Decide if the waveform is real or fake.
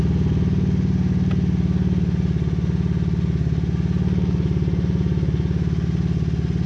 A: real